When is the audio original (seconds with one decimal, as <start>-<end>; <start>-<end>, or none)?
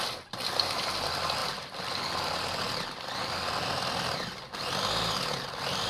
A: 0.0-5.9